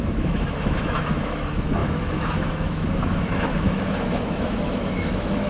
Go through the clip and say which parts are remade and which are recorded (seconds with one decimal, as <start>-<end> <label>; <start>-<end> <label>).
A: 0.0-5.5 remade